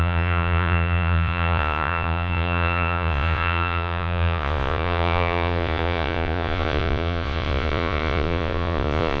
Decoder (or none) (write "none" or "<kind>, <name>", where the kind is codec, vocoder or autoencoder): vocoder, Vocos